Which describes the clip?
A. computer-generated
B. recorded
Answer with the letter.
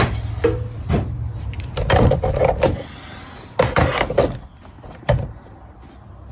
B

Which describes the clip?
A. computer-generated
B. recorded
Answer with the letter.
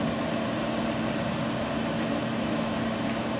B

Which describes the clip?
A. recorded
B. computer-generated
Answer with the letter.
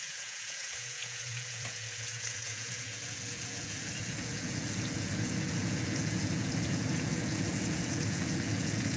B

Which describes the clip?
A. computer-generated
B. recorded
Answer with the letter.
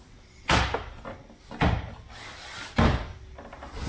B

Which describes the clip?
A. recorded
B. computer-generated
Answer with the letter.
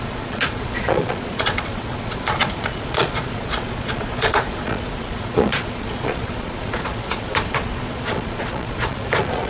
B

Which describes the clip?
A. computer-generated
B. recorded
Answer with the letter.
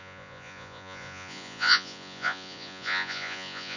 A